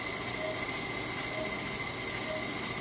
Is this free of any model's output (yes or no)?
yes